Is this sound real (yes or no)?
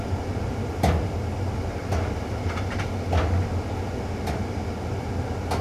yes